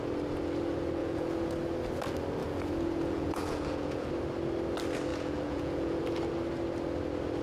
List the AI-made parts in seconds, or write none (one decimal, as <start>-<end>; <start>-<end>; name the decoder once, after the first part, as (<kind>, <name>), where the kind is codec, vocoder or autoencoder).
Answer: 1.0-1.5 (vocoder, Vocos); 2.4-4.1; 5.1-6.0